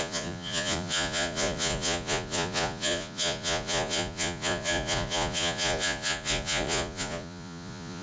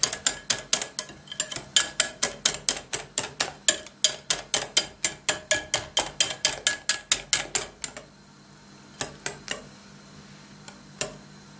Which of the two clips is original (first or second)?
second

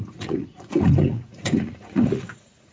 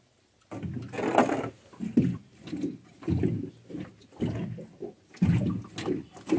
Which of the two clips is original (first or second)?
second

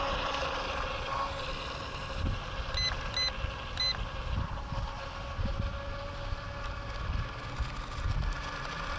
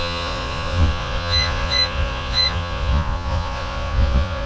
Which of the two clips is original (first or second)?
first